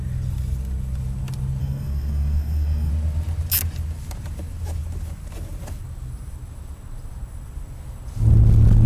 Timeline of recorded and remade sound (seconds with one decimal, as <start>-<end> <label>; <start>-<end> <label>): 0.0-1.6 recorded; 1.6-2.9 remade; 2.9-8.9 recorded